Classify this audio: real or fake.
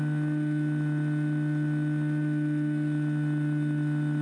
real